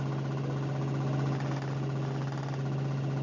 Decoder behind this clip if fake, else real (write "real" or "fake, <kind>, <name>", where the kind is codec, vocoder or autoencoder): real